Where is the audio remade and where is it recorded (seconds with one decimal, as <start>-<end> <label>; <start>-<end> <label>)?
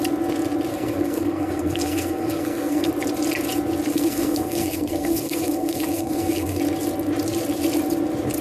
0.0-0.7 recorded; 0.7-2.9 remade; 2.9-3.9 recorded; 3.9-6.6 remade; 6.6-8.4 recorded